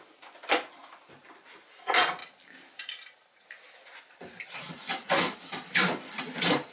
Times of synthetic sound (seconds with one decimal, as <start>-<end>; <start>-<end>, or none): 2.2-6.2